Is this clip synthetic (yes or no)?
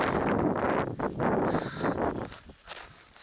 no